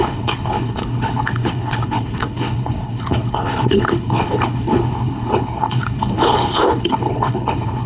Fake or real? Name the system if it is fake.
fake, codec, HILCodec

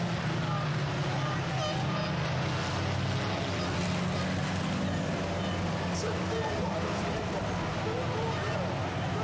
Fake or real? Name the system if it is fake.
real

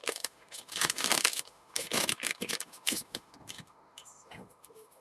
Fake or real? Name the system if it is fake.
fake, autoencoder, DAC-VAE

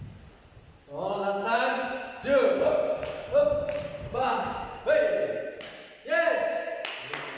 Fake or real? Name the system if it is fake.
real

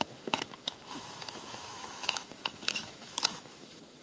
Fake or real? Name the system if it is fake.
fake, autoencoder, DAC-VAE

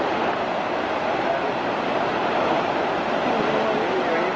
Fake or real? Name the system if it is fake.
real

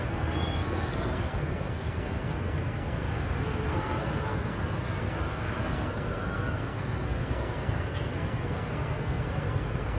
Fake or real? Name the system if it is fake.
fake, codec, SNAC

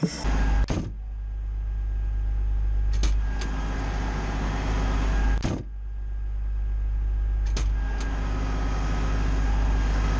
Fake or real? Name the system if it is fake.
real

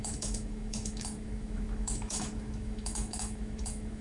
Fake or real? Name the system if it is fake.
fake, autoencoder, DAC-VAE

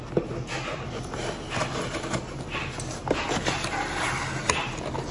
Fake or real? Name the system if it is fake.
real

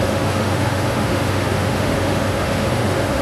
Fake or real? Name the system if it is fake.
fake, autoencoder, DAC-VAE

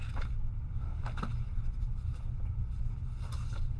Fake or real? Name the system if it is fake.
real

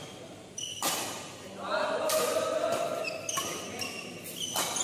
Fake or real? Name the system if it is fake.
real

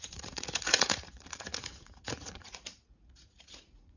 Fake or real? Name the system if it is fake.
fake, vocoder, Vocos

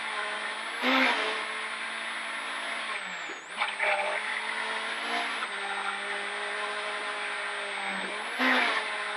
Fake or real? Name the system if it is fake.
real